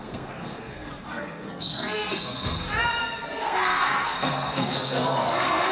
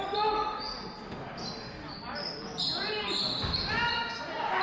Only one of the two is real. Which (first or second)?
second